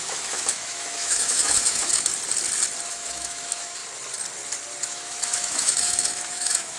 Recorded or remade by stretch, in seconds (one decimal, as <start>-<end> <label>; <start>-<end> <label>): 0.0-2.1 remade; 2.1-2.9 recorded; 2.9-3.8 remade; 3.8-4.8 recorded; 4.8-6.8 remade